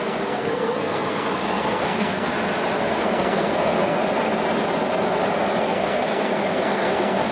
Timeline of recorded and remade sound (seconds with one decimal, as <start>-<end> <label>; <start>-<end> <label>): 0.0-2.3 remade; 2.3-2.8 recorded; 2.8-4.0 remade; 4.0-5.6 recorded; 5.6-7.3 remade